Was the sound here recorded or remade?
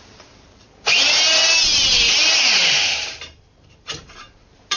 remade